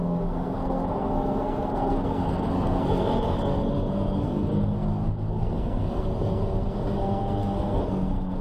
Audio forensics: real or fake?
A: fake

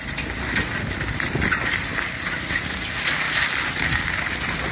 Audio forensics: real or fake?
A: real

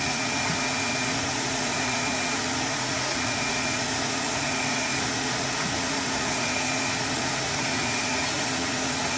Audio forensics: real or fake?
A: fake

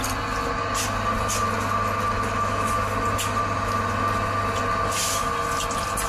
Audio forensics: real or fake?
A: real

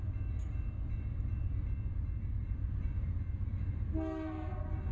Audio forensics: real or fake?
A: real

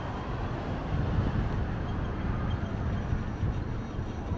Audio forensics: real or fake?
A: real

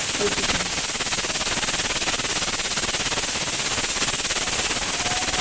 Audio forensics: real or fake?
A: real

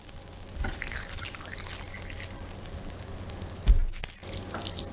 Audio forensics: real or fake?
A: real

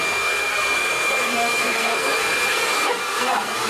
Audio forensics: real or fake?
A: fake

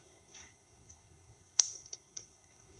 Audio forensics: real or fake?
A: fake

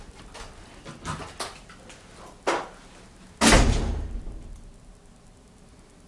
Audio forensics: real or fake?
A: real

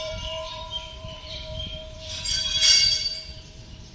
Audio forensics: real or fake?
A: fake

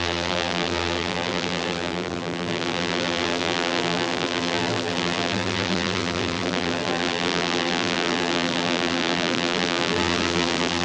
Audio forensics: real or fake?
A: fake